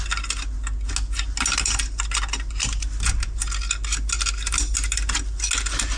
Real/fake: real